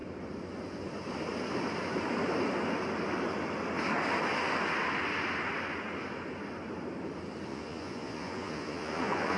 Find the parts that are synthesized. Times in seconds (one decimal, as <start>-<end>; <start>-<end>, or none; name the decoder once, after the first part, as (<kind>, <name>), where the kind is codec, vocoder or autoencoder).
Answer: 7.5-9.4 (vocoder, Vocos)